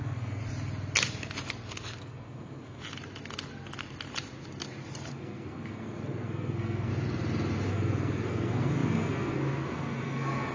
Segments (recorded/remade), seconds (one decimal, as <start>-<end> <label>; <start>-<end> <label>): 0.0-0.4 remade; 0.4-2.0 recorded; 2.0-2.8 remade; 2.8-5.1 recorded; 5.1-6.9 remade; 6.9-7.7 recorded; 7.7-10.5 remade